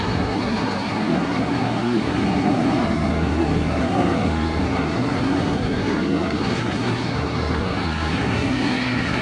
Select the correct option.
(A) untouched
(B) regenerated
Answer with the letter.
B